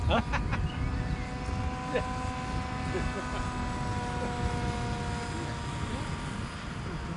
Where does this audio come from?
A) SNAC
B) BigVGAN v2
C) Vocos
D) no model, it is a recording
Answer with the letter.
D